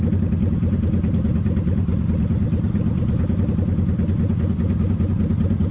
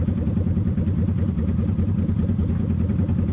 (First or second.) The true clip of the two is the first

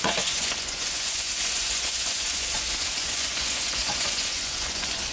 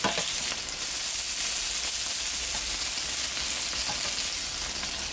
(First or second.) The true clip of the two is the second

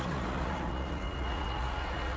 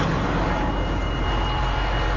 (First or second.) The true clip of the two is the second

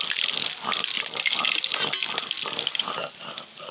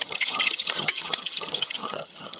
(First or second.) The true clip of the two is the first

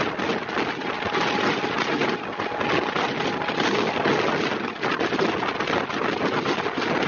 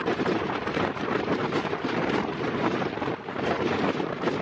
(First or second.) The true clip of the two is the first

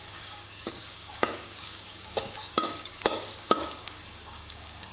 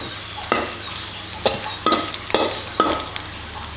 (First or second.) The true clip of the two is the second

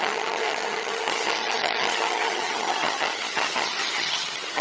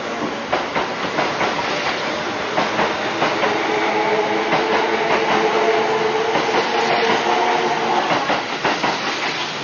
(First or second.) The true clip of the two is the second